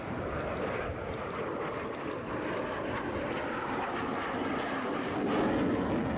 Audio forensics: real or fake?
real